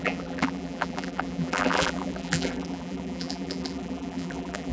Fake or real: fake